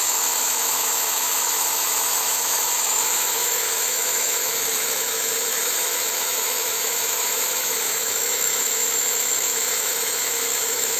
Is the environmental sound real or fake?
fake